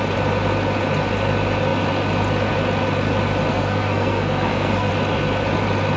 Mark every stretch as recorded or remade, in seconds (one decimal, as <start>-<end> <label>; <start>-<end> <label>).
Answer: 0.0-3.5 recorded; 3.5-4.9 remade; 4.9-6.0 recorded